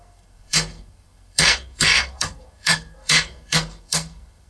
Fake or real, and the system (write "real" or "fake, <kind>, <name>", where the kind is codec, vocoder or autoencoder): fake, codec, SNAC